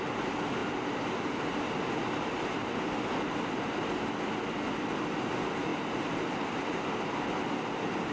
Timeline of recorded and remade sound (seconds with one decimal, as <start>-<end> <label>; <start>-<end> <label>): 0.0-8.1 recorded